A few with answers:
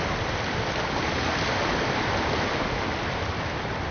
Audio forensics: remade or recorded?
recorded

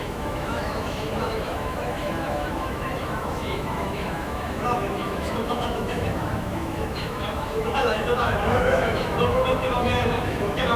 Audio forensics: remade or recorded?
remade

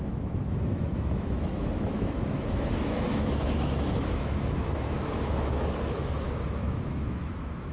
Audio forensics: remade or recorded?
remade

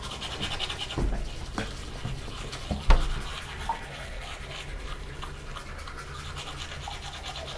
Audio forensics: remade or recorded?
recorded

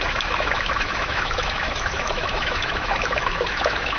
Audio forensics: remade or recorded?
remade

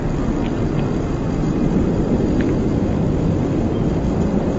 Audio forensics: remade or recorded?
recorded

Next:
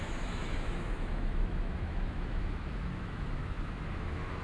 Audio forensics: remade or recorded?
remade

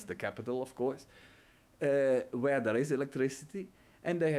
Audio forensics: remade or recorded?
remade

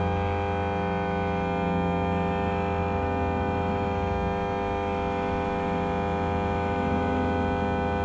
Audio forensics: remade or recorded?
remade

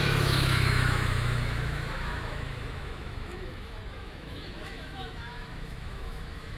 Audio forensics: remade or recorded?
remade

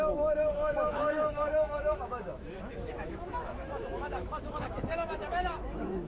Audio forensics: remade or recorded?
remade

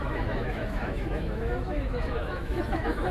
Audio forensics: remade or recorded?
remade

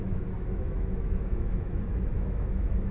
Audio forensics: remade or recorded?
remade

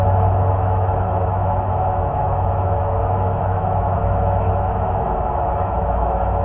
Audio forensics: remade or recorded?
remade